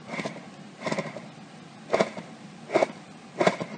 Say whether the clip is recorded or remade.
recorded